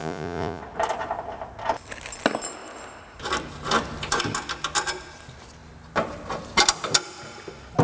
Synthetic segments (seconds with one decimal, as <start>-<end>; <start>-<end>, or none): 0.0-0.6